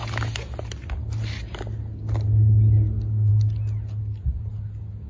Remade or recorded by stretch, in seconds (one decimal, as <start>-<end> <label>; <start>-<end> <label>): 0.0-5.1 recorded